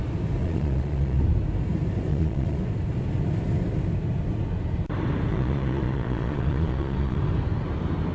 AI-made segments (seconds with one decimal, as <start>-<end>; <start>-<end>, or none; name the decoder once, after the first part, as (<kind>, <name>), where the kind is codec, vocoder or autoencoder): 0.4-1.2 (vocoder, Vocos); 2.1-2.6; 5.3-7.2